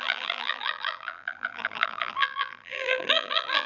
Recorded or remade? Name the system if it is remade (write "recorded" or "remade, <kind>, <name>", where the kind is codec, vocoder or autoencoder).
remade, vocoder, BigVGAN v2